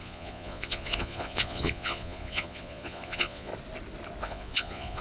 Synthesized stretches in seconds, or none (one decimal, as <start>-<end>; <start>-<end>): 0.0-3.5; 4.2-5.0